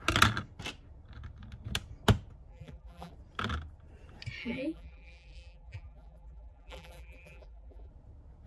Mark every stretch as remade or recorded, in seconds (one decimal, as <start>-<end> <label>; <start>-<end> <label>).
0.0-2.5 recorded; 2.5-3.1 remade; 3.1-4.4 recorded; 4.4-7.9 remade; 7.9-8.5 recorded